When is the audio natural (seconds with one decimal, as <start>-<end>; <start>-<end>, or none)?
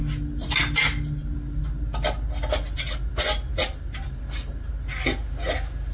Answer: 0.0-5.9